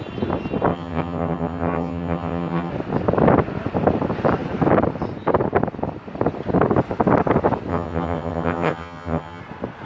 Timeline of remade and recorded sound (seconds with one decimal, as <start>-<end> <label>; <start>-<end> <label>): 0.0-0.7 recorded; 0.7-2.7 remade; 2.7-7.7 recorded; 7.7-9.4 remade; 9.4-9.9 recorded